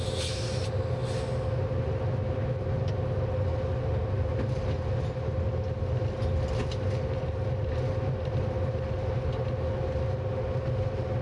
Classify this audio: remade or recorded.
recorded